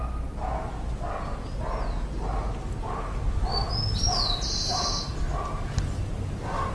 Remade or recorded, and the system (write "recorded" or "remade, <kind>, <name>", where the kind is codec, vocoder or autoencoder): recorded